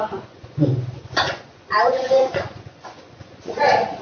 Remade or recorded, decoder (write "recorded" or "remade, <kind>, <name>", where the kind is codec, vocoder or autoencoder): remade, vocoder, Vocos